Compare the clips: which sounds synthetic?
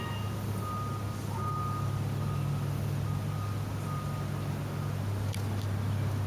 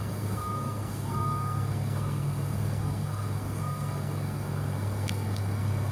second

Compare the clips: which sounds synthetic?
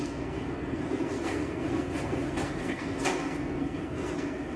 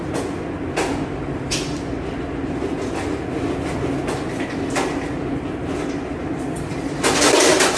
first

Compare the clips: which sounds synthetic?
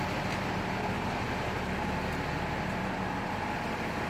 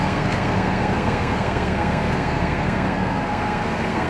second